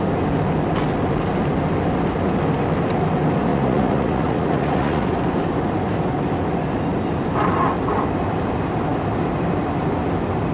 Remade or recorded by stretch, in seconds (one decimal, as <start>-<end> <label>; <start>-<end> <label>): 0.0-3.5 recorded; 3.5-5.1 remade; 5.1-10.5 recorded